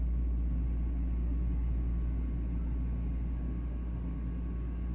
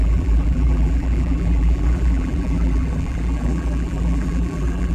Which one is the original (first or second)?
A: first